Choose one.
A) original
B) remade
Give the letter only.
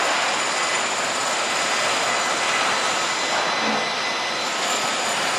A